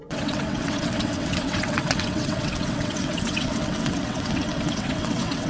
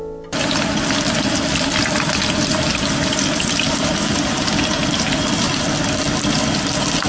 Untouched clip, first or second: second